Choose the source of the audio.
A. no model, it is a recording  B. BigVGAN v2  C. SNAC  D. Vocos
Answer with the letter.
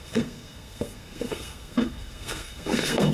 C